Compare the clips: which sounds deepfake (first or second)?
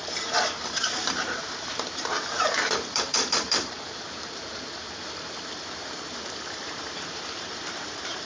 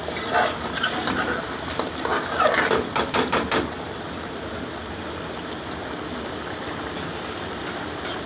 first